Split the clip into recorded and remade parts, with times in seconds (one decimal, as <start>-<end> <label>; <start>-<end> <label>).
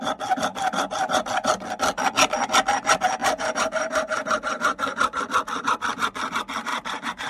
0.0-3.2 recorded; 3.2-5.2 remade; 5.2-6.7 recorded; 6.7-7.3 remade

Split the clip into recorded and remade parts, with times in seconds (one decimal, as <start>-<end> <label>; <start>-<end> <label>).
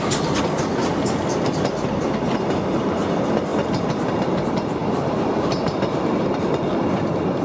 0.0-3.5 recorded; 3.5-4.1 remade; 4.1-7.4 recorded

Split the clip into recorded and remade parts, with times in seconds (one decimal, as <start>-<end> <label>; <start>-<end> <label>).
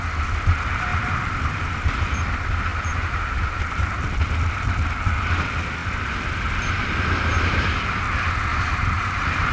0.0-0.9 recorded; 0.9-1.9 remade; 1.9-2.7 recorded; 2.7-3.6 remade; 3.6-8.5 recorded; 8.5-9.5 remade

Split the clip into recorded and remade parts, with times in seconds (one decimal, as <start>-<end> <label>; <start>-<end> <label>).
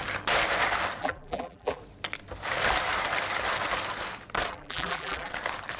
0.0-1.0 recorded; 1.0-1.8 remade; 1.8-4.5 recorded; 4.5-5.3 remade; 5.3-5.8 recorded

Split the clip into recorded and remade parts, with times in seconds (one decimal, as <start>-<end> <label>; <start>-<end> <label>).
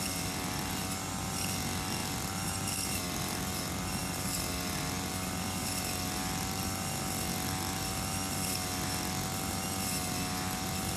0.0-11.0 recorded